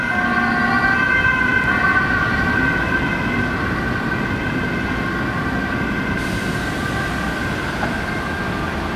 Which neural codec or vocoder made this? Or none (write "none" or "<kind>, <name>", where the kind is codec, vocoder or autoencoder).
none